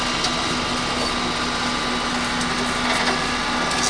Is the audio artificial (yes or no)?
no